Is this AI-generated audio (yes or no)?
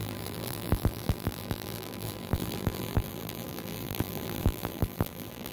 yes